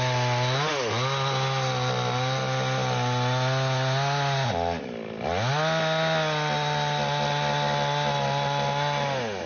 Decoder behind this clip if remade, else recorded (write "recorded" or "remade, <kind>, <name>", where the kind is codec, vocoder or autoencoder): recorded